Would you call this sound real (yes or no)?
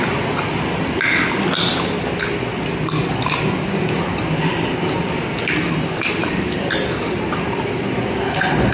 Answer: yes